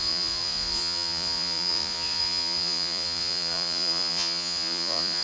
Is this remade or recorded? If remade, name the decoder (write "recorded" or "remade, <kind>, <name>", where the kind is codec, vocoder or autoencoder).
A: remade, vocoder, Vocos